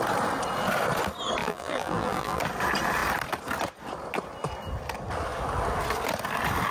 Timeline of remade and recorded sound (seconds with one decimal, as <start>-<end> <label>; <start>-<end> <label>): 0.0-1.4 recorded; 1.4-2.4 remade; 2.4-6.7 recorded